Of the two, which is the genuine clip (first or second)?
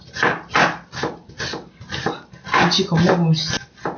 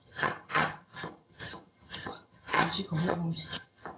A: first